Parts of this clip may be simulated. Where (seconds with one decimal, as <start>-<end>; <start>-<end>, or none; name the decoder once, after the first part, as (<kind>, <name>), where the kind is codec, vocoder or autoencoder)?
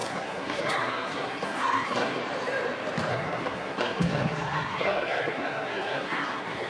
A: 0.0-2.2 (codec, SNAC); 3.1-6.7